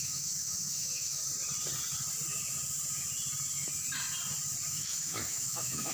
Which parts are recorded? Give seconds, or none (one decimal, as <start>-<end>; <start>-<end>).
1.2-4.7